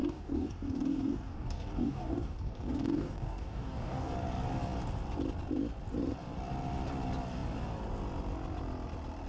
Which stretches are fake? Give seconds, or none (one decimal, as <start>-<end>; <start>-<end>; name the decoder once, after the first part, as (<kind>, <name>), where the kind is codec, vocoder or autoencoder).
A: 0.0-4.1 (codec, DAC)